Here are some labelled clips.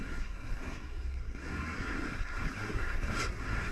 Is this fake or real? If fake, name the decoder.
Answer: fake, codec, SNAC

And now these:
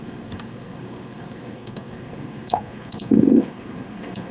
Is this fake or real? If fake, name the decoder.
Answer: fake, codec, SNAC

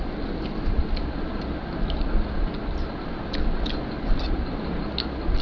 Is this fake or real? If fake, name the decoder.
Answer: real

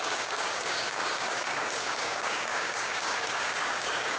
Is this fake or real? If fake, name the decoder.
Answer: fake, codec, DAC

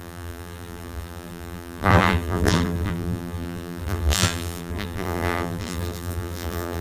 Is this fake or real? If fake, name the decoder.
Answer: fake, vocoder, BigVGAN v2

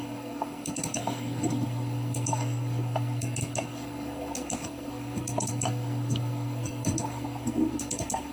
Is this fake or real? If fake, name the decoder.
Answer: fake, codec, SNAC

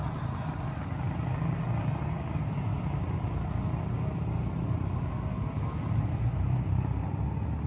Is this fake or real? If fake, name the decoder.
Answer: real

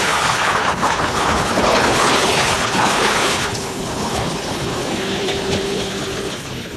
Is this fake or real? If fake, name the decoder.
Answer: fake, codec, HILCodec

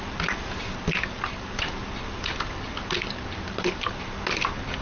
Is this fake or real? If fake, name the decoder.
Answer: real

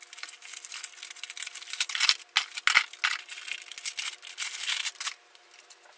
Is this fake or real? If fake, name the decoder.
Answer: real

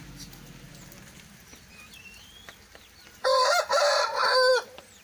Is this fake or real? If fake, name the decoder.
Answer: real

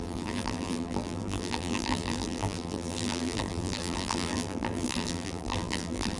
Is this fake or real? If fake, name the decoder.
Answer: fake, vocoder, BigVGAN v2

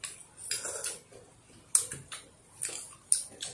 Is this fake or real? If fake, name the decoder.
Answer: real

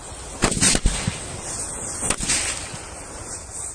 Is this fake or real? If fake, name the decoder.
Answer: real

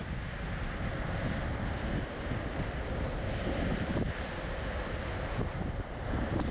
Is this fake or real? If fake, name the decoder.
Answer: real